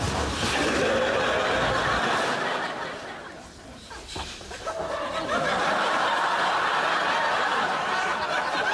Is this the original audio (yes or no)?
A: yes